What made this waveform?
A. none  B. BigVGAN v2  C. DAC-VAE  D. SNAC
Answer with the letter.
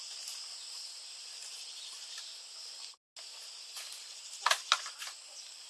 A